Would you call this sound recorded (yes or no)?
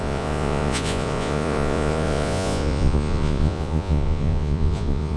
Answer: no